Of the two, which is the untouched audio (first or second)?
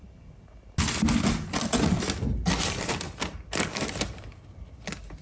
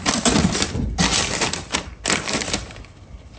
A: first